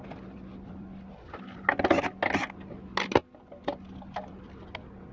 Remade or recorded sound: recorded